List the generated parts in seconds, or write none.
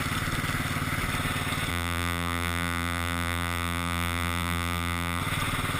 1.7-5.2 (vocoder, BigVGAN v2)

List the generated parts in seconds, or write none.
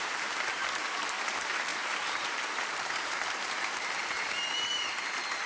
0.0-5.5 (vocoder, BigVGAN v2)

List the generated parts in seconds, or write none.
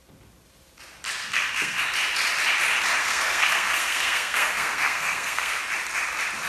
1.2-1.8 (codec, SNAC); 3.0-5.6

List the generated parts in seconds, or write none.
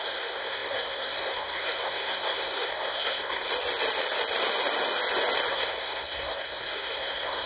0.0-3.5 (codec, SNAC); 5.5-7.5